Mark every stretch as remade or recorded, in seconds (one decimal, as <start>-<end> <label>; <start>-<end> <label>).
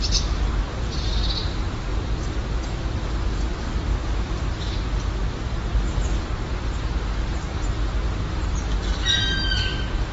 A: 0.0-10.1 recorded